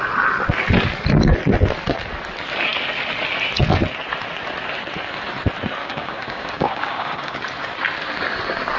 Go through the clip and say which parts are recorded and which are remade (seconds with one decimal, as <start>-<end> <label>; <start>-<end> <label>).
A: 0.0-5.8 recorded; 5.8-7.4 remade; 7.4-8.8 recorded